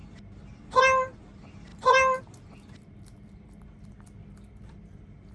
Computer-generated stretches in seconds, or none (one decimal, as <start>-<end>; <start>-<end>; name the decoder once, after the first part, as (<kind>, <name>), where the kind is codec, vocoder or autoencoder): none